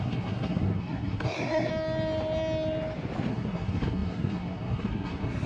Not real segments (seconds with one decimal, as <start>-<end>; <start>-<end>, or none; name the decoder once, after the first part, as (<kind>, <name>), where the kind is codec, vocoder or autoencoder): 0.0-1.7 (codec, SNAC); 3.3-5.5